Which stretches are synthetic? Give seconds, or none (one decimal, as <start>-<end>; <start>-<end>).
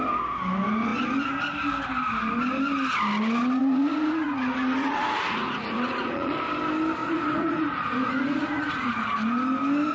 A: 3.6-6.3; 7.0-8.9